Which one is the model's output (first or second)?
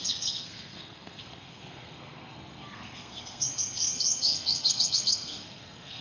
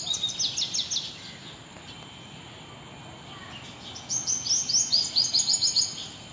first